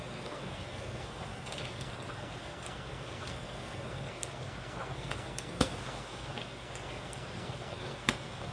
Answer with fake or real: fake